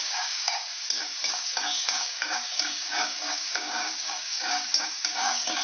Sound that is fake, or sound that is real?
fake